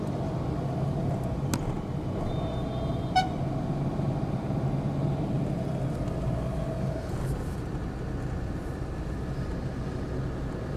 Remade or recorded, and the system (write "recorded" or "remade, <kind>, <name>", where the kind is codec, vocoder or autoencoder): recorded